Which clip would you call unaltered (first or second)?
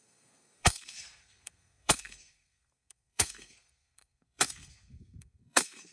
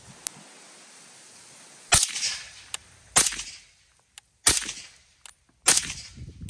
second